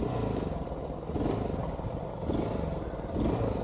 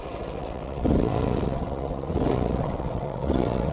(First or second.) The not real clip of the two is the second